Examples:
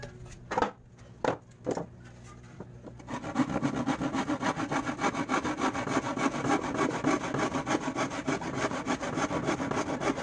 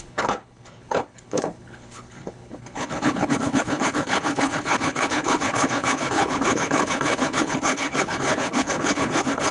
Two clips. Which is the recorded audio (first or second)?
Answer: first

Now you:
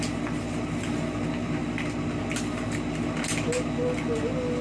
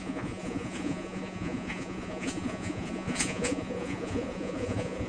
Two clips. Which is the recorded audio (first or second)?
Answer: first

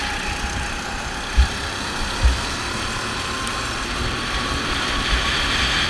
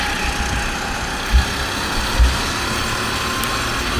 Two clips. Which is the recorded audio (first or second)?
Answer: second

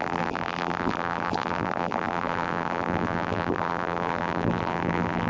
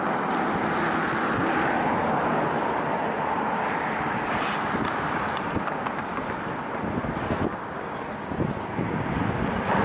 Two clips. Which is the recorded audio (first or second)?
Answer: second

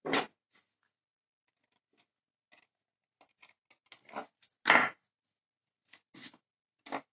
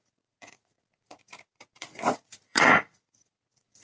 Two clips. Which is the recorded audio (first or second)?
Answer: first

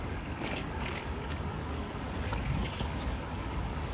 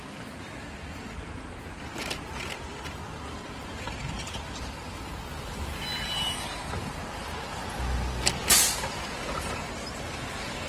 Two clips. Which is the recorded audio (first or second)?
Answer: second